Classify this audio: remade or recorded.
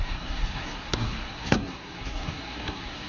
remade